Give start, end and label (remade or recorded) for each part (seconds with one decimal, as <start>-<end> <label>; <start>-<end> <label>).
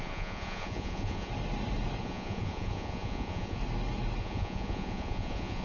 0.0-1.3 remade; 1.3-2.0 recorded; 2.0-3.6 remade; 3.6-4.2 recorded; 4.2-5.6 remade